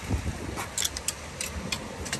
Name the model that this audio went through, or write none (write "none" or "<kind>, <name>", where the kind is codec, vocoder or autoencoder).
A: none